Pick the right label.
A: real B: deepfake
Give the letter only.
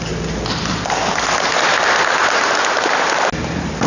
A